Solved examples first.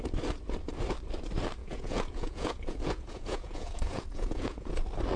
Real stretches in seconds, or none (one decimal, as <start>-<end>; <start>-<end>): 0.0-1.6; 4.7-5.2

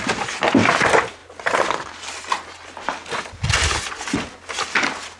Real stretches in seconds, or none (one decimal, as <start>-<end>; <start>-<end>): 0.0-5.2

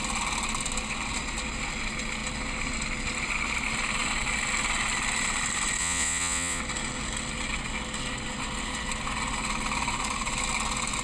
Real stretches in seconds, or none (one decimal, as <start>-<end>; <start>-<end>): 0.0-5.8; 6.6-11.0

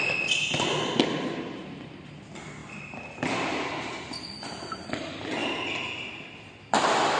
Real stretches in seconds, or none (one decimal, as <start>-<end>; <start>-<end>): 0.0-7.2

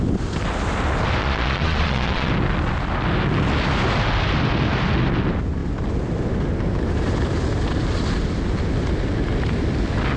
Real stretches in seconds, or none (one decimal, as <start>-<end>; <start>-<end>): 0.0-1.2; 2.3-10.2

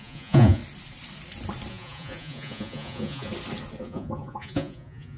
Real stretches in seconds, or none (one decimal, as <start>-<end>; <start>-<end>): 0.6-1.7; 3.3-3.8